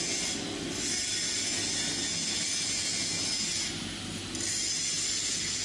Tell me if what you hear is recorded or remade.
recorded